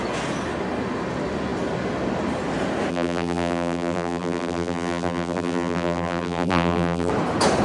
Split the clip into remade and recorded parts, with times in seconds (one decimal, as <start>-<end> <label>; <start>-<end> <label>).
0.0-2.9 recorded; 2.9-7.1 remade; 7.1-7.6 recorded

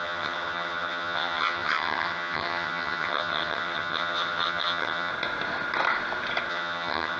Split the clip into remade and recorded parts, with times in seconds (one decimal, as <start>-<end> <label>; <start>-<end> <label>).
0.0-5.1 remade; 5.1-6.5 recorded; 6.5-7.2 remade

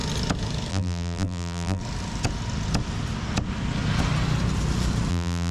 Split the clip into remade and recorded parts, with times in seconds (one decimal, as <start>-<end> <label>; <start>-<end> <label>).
0.0-0.7 recorded; 0.7-1.8 remade; 1.8-5.1 recorded; 5.1-5.5 remade

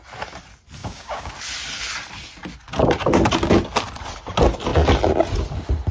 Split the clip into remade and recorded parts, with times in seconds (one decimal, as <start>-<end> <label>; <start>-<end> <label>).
0.0-0.8 recorded; 0.8-1.3 remade; 1.3-5.9 recorded

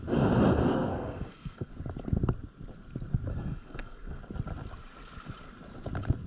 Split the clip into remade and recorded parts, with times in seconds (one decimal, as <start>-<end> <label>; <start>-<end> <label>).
0.0-0.7 recorded; 0.7-1.7 remade; 1.7-3.3 recorded; 3.3-4.2 remade; 4.2-6.3 recorded